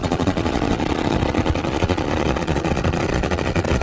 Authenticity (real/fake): fake